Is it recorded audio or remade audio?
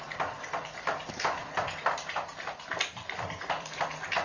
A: remade